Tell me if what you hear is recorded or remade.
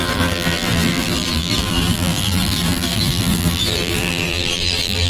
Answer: remade